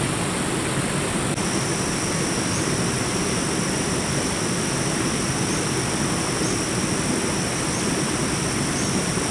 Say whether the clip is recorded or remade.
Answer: recorded